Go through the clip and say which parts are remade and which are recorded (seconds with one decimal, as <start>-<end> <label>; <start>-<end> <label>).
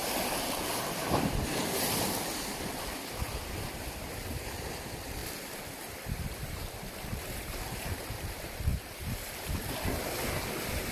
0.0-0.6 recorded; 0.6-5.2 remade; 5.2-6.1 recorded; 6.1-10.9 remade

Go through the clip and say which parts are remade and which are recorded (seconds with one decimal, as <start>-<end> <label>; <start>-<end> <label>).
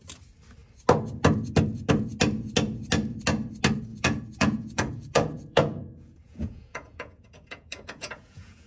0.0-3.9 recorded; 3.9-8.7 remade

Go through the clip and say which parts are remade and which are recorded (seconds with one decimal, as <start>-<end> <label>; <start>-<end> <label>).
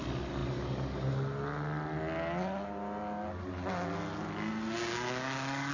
0.0-4.9 recorded; 4.9-5.7 remade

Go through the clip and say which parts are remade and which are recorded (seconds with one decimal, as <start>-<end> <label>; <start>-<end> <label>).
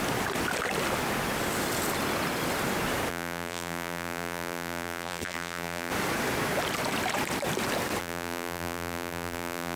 0.0-3.1 recorded; 3.1-5.9 remade; 5.9-8.0 recorded; 8.0-9.8 remade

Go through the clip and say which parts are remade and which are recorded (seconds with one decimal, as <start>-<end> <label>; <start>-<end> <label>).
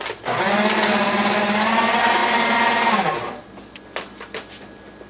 0.0-5.1 recorded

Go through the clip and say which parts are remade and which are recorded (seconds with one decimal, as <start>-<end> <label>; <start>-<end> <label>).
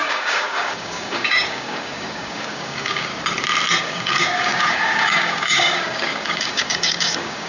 0.0-3.1 remade; 3.1-3.8 recorded; 3.8-7.5 remade